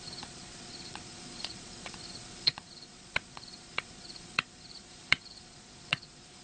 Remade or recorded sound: remade